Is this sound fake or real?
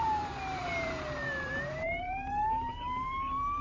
fake